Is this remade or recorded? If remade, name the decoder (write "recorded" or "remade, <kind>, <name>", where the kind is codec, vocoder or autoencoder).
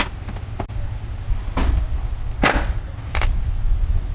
recorded